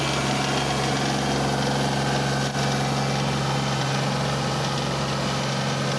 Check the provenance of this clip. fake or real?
real